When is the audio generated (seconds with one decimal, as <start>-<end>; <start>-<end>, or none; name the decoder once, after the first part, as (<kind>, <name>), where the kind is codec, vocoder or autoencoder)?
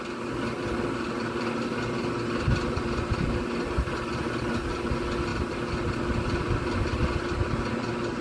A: none